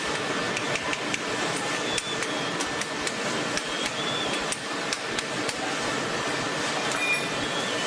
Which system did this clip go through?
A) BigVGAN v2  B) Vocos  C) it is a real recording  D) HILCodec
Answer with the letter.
C